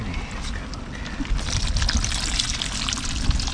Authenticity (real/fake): real